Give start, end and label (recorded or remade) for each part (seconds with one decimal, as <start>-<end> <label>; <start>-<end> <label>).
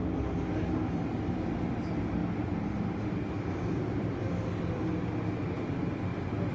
0.0-0.9 recorded; 0.9-2.2 remade; 2.2-3.5 recorded; 3.5-4.2 remade; 4.2-5.5 recorded; 5.5-6.5 remade